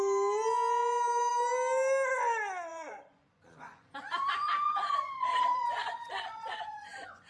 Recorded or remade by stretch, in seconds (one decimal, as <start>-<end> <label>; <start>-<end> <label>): 0.0-2.7 recorded; 2.7-7.3 remade